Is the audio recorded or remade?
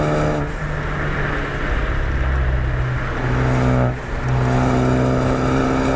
recorded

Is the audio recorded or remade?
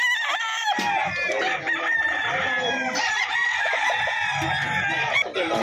recorded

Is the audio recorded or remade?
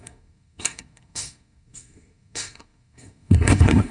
remade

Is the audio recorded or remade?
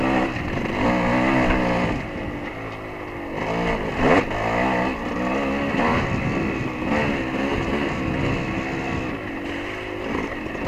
recorded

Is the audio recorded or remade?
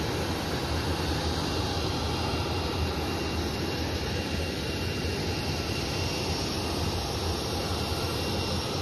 recorded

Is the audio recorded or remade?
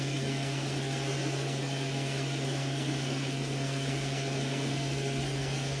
remade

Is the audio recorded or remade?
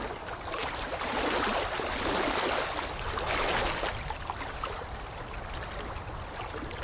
recorded